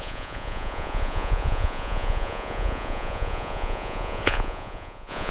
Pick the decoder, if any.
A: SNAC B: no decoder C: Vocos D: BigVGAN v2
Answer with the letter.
C